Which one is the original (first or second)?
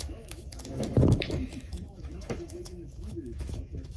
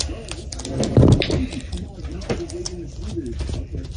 second